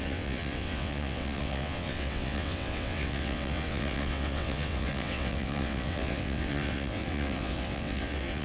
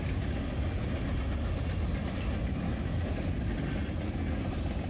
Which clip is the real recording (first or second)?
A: second